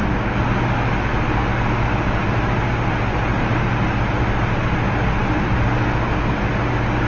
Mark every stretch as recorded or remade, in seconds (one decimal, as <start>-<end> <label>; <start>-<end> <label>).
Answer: 0.0-7.1 recorded